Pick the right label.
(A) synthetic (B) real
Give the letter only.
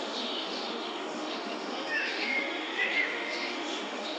A